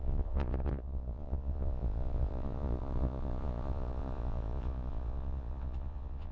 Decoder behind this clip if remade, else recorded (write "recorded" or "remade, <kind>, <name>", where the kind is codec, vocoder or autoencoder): remade, vocoder, Vocos